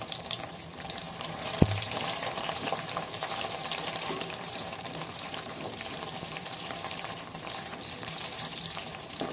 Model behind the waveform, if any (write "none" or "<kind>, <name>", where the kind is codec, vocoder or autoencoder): vocoder, BigVGAN v2